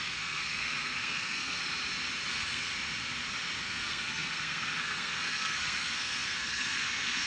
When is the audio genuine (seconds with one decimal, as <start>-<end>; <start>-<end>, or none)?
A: 1.6-2.3; 2.7-3.6